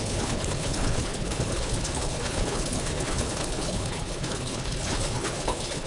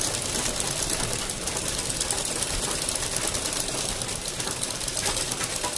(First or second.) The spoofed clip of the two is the first